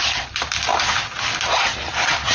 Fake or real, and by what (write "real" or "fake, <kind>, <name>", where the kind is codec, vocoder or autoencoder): real